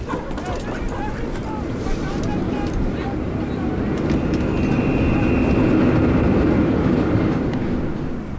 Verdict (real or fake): real